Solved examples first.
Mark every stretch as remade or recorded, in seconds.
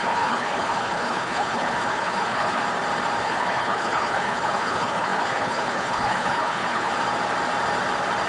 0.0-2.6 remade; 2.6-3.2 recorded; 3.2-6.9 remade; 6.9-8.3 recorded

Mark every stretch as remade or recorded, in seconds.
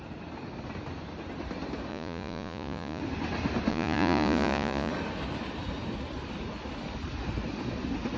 0.0-1.9 recorded; 1.9-3.0 remade; 3.0-3.7 recorded; 3.7-4.9 remade; 4.9-8.2 recorded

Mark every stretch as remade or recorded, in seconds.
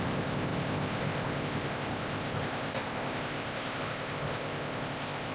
0.0-5.3 remade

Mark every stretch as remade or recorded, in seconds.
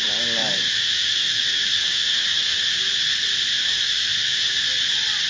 0.0-0.4 recorded; 0.4-2.7 remade; 2.7-3.5 recorded; 3.5-4.5 remade; 4.5-5.3 recorded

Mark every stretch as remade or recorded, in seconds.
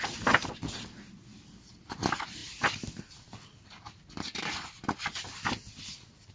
0.0-2.4 remade; 2.4-6.3 recorded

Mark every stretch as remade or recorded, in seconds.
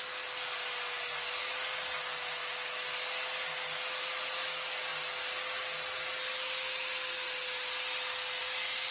0.0-8.9 recorded